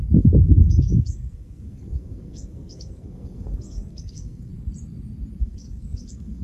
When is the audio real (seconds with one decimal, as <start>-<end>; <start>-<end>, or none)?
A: 4.5-5.4